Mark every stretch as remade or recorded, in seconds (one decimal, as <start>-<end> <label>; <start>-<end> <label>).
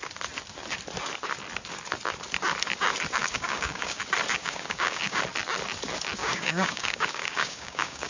0.0-3.2 recorded; 3.2-4.0 remade; 4.0-4.4 recorded; 4.4-5.2 remade; 5.2-6.2 recorded; 6.2-8.1 remade